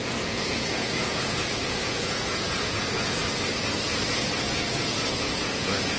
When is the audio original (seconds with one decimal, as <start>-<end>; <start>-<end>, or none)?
3.2-4.8